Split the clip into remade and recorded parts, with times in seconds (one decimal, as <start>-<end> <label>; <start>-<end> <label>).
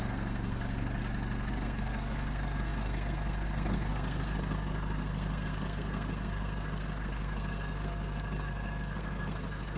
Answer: 0.0-1.0 remade; 1.0-1.5 recorded; 1.5-9.8 remade